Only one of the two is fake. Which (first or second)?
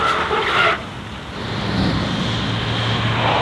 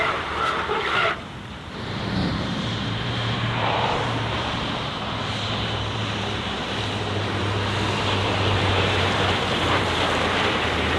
second